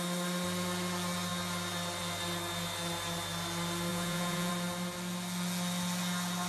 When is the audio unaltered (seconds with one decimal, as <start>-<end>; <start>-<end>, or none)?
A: 0.0-3.9; 4.5-6.5